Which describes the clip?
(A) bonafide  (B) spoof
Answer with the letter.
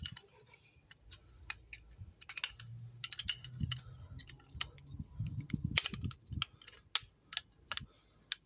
A